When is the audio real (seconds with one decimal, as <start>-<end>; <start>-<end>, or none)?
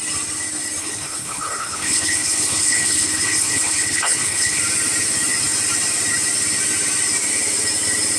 0.0-0.8; 4.6-8.2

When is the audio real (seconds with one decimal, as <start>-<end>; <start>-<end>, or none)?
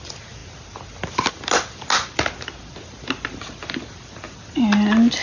0.0-5.2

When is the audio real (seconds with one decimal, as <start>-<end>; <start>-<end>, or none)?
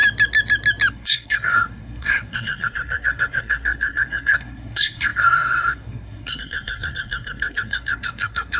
0.0-0.9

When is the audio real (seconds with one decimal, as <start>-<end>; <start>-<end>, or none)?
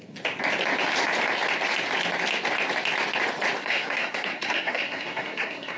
0.0-3.6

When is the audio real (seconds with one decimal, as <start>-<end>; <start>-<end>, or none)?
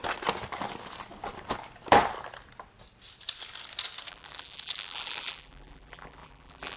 0.0-4.1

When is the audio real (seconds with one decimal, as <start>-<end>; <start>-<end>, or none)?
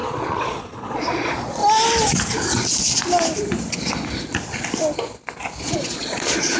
1.6-5.6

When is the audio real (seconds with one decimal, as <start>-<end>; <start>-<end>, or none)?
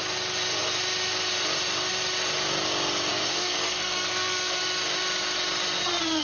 0.0-3.1; 4.6-6.2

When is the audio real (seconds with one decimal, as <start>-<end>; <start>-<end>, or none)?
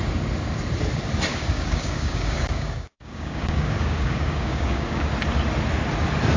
0.0-1.3; 5.1-6.4